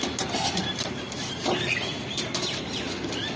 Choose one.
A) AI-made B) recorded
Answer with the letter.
B